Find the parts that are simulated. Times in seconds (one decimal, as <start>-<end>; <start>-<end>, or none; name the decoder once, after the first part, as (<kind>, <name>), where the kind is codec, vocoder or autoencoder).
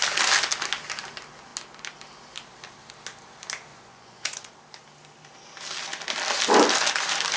3.7-4.5 (vocoder, Vocos)